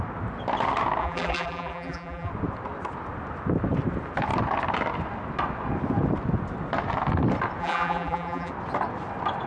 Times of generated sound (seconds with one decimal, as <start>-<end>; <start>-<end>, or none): 1.0-2.3; 7.6-8.5